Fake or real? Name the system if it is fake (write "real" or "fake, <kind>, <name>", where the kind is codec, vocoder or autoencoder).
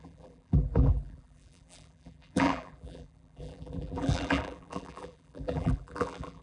fake, vocoder, BigVGAN v2